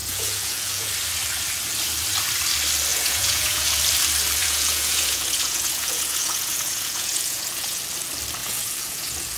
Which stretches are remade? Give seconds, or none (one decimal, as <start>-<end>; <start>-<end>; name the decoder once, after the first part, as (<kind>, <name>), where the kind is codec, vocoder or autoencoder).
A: 0.0-0.9 (vocoder, Vocos); 2.9-3.8; 4.4-7.8; 8.4-9.4